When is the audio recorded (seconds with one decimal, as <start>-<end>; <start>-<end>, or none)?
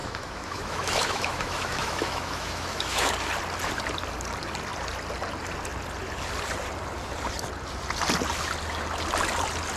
3.1-9.8